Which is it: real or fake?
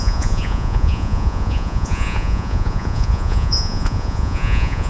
fake